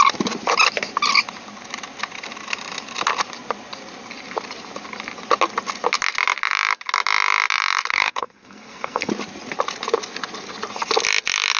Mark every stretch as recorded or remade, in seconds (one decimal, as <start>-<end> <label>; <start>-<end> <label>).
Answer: 0.0-7.9 recorded; 7.9-9.1 remade; 9.1-11.6 recorded